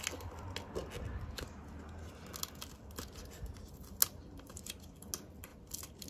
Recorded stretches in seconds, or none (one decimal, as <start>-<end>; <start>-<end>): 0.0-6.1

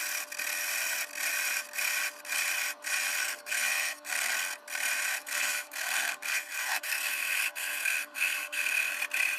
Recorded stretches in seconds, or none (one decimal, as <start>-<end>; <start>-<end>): 0.0-3.2; 4.3-5.1; 8.9-9.4

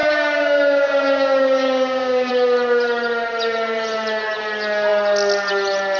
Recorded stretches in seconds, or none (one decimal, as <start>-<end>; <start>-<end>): 2.3-6.0

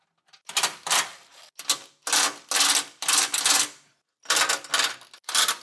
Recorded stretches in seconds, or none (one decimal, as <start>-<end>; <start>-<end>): 0.0-5.6

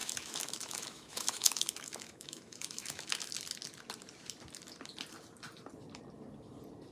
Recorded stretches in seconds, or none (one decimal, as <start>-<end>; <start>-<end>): 3.3-6.9